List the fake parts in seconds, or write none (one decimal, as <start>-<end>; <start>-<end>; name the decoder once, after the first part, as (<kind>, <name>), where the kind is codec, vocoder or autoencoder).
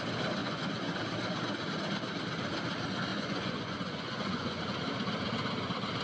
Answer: 0.4-1.0 (vocoder, Vocos); 3.1-4.6